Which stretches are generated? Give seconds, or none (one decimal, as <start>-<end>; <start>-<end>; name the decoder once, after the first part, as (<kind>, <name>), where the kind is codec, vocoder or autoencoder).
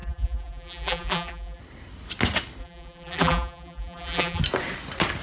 0.0-1.6 (vocoder, BigVGAN v2); 2.6-4.4